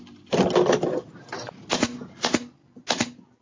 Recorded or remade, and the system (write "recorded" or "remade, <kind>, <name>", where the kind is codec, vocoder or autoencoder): recorded